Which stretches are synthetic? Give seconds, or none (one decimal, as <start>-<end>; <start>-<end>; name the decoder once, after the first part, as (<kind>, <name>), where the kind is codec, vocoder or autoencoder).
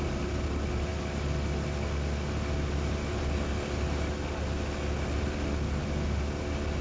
none